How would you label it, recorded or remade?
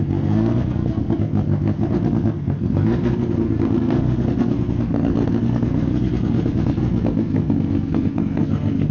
remade